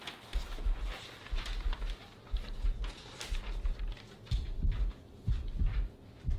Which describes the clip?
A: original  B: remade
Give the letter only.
A